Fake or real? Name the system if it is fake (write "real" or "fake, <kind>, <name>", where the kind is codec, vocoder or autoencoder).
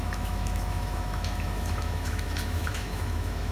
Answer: fake, autoencoder, DAC-VAE